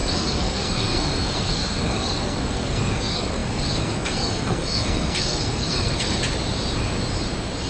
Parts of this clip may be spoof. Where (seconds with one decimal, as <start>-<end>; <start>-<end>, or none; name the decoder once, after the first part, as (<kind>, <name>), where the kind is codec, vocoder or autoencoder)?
0.0-6.2 (codec, SNAC)